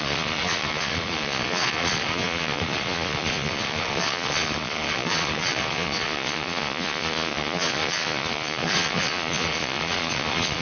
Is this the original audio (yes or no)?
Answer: no